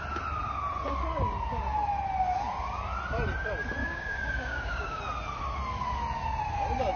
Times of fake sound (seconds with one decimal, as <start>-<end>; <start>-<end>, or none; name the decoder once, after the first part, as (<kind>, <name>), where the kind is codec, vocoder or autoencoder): 3.8-5.0 (codec, DAC)